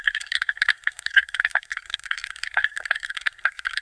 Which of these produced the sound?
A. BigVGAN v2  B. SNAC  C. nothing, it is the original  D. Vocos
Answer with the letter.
B